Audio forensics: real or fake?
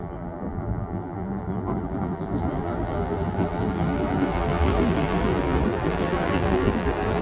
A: fake